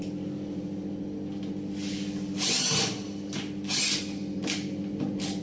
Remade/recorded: recorded